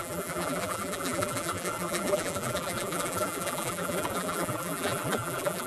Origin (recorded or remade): remade